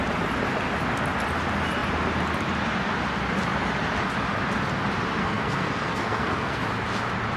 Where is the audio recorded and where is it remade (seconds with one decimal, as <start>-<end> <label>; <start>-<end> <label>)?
0.0-5.2 recorded; 5.2-6.6 remade; 6.6-7.4 recorded